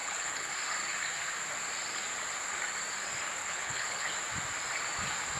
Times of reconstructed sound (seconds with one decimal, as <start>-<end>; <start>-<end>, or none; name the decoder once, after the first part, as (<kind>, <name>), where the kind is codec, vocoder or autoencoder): 0.0-0.5 (codec, HILCodec); 3.4-4.1

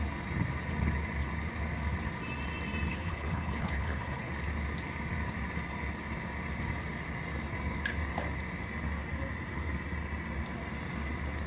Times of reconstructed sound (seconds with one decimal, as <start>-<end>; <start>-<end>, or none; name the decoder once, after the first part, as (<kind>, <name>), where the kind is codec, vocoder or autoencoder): 2.9-4.3 (codec, HILCodec)

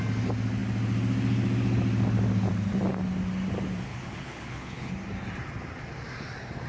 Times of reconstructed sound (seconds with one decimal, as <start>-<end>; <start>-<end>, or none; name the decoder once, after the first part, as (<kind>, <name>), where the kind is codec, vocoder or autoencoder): 3.9-4.9 (codec, HILCodec)

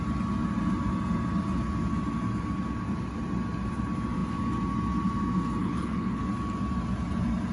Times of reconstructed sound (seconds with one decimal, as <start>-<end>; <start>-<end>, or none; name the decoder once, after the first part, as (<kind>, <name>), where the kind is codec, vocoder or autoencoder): 5.6-6.2 (codec, HILCodec)

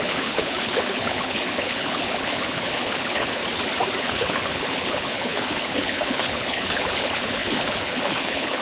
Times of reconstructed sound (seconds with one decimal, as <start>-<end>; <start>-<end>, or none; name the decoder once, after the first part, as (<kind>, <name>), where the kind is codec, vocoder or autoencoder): 0.0-3.4 (codec, HILCodec); 4.0-8.6

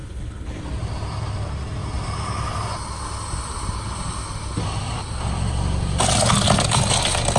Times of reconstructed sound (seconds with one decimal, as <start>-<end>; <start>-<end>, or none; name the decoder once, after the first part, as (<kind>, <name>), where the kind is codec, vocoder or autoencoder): 0.0-0.6 (codec, HILCodec)

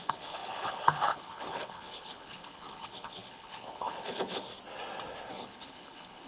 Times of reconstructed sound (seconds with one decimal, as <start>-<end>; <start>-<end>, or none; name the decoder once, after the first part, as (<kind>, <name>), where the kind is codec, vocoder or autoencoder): 0.0-4.5 (codec, HILCodec); 5.3-6.3